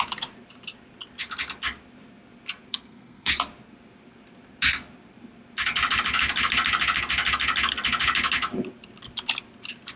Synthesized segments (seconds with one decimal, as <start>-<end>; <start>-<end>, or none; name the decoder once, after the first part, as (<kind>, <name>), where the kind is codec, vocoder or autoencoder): 2.7-3.3 (codec, SNAC)